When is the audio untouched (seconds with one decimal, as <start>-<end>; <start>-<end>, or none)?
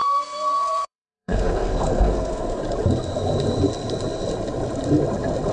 2.6-5.5